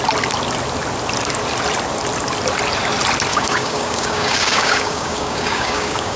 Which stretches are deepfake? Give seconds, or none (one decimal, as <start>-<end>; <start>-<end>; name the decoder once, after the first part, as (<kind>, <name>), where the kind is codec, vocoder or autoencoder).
3.3-6.2 (codec, DAC)